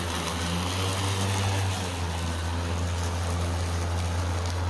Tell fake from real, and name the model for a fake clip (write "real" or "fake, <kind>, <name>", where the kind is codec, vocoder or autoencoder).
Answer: real